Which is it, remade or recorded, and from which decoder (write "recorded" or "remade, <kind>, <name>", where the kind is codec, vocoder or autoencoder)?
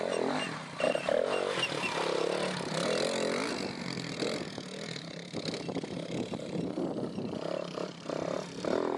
recorded